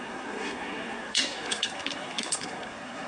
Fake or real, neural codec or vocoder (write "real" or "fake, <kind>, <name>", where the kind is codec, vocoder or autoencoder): fake, codec, SNAC